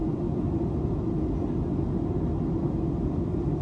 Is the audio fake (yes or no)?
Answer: no